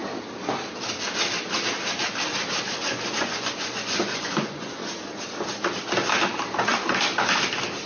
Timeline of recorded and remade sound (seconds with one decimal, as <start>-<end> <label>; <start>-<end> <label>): 0.0-2.8 recorded; 2.8-4.8 remade; 4.8-7.9 recorded